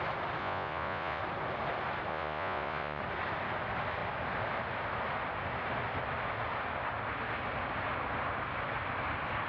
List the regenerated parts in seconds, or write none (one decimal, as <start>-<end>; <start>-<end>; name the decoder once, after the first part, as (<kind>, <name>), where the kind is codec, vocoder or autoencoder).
0.4-1.2 (vocoder, Vocos); 2.1-3.0